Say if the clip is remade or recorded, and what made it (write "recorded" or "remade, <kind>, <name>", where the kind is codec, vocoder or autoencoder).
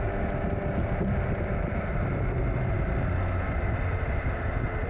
recorded